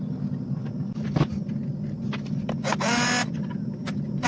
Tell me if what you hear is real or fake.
real